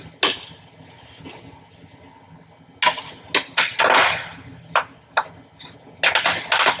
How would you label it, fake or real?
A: real